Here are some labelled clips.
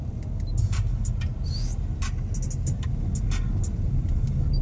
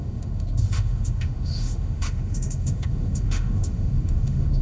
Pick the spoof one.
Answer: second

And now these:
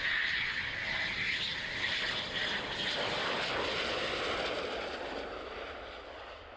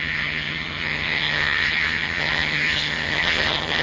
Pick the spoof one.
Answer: second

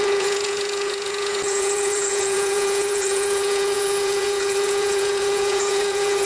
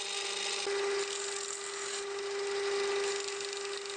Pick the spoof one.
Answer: first